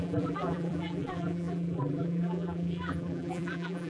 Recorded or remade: remade